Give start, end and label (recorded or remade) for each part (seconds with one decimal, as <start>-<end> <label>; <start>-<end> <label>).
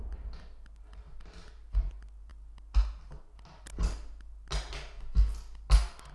0.0-6.1 recorded